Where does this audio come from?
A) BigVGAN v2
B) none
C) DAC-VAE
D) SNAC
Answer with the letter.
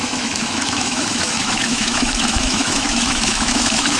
C